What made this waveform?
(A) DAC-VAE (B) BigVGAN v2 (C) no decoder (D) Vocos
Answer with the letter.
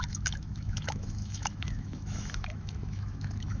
A